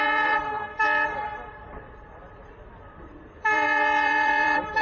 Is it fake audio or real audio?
fake